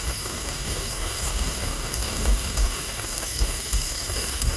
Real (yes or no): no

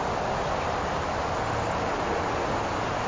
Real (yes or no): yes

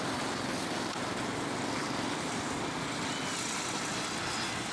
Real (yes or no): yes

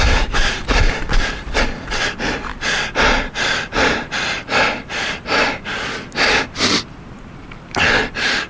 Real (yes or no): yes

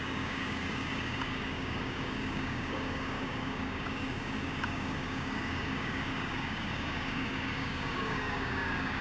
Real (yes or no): no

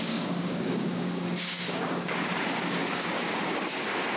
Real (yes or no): no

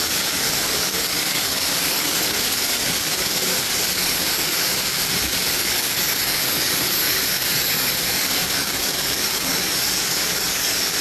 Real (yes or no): no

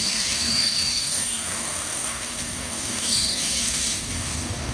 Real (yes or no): no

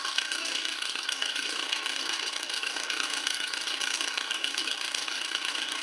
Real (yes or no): no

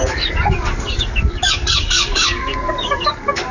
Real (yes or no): no